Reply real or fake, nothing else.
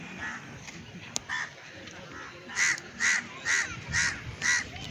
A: real